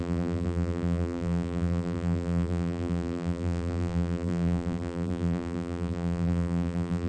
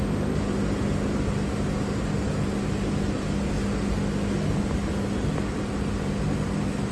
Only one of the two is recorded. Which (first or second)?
second